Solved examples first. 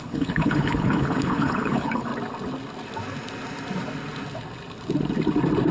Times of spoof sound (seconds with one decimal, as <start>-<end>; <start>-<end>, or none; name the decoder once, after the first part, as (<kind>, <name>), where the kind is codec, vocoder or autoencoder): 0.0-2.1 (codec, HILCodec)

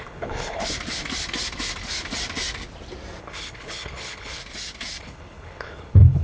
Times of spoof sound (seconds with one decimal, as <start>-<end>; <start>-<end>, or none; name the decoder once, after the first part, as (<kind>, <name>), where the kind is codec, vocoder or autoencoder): 0.0-0.6 (codec, HILCodec); 3.2-4.4; 5.0-6.2

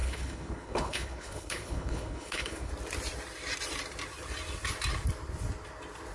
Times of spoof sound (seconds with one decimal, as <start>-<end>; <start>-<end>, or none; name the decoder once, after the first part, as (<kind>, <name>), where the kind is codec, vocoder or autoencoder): 0.0-2.7 (codec, HILCodec)